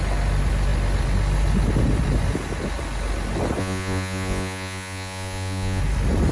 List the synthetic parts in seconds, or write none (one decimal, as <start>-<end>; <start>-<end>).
3.6-5.8